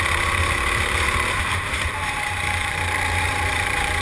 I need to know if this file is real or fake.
fake